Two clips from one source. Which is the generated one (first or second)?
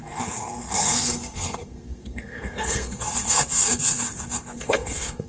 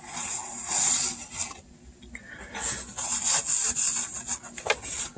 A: first